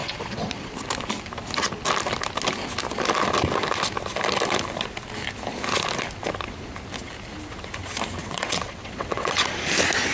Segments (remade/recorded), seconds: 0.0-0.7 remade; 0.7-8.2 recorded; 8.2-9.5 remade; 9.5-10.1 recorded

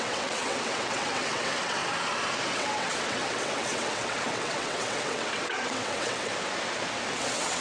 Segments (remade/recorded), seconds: 0.0-1.8 remade; 1.8-2.5 recorded; 2.5-6.3 remade; 6.3-7.1 recorded; 7.1-7.6 remade

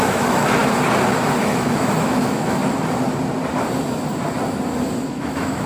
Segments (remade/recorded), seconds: 0.0-0.6 remade; 0.6-1.4 recorded; 1.4-2.6 remade; 2.6-5.1 recorded; 5.1-5.7 remade

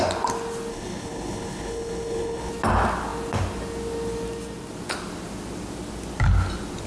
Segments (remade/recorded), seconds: 0.0-0.7 recorded; 0.7-2.5 remade; 2.5-6.9 recorded

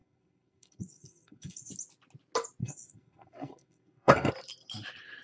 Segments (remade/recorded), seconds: 0.0-1.7 remade; 1.7-2.6 recorded; 2.6-4.3 remade; 4.3-5.2 recorded